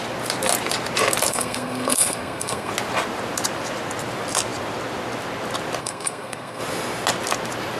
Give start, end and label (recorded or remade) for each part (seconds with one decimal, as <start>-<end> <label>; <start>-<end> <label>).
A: 0.0-1.3 recorded; 1.3-2.7 remade; 2.7-5.8 recorded; 5.8-6.6 remade; 6.6-7.8 recorded